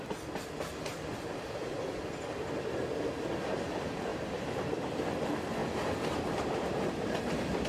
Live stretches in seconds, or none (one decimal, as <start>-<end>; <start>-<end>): 0.0-1.1; 2.0-5.6; 7.2-7.7